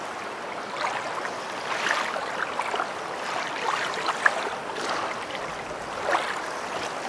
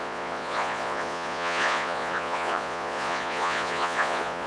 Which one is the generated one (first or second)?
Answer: second